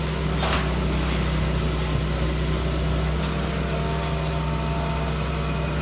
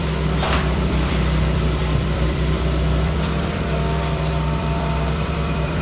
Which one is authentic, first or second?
first